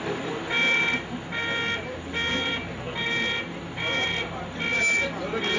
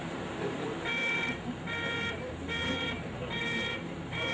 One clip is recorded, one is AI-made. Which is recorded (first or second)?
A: first